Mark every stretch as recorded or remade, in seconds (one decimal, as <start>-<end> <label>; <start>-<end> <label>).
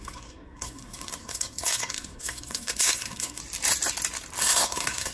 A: 0.0-3.4 remade; 3.4-4.4 recorded; 4.4-5.1 remade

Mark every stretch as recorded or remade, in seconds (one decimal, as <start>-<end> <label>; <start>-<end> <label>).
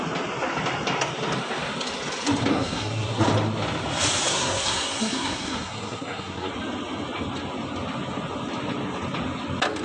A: 0.0-2.5 recorded; 2.5-3.2 remade; 3.2-4.3 recorded; 4.3-6.5 remade; 6.5-9.8 recorded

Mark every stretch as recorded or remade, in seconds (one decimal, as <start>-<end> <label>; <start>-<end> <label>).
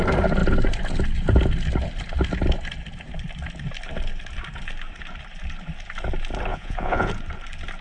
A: 0.0-6.5 recorded; 6.5-7.1 remade; 7.1-7.8 recorded